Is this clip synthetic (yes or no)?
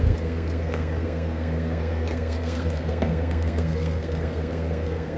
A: yes